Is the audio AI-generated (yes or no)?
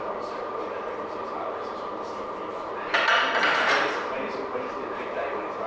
yes